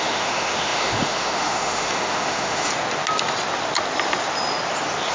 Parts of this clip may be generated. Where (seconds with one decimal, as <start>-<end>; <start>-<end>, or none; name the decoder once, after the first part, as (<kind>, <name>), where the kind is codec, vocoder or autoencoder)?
0.0-2.7 (autoencoder, DAC-VAE)